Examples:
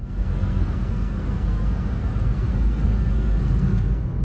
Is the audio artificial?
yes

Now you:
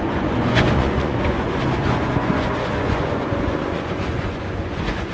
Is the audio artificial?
yes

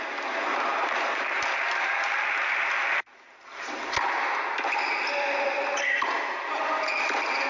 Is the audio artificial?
no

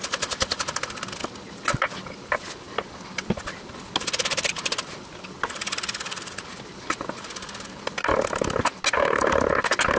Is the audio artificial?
no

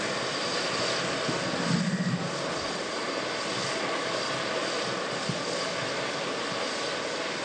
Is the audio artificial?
no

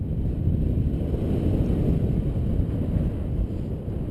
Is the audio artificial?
no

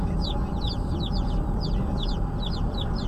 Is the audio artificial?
no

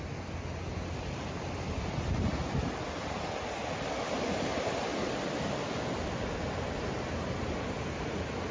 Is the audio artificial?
no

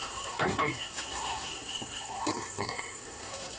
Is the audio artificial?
yes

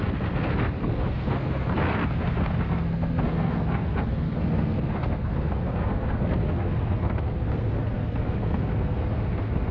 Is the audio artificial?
yes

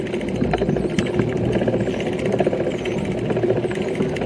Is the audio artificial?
no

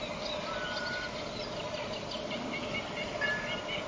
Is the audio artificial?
no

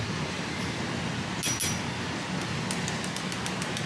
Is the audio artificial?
no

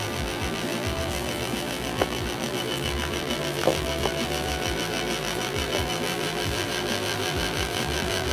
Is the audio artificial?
yes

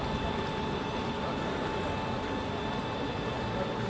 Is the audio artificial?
no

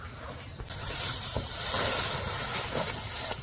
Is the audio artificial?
no